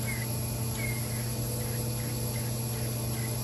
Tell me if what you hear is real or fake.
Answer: real